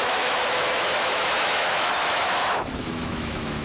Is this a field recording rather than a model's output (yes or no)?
no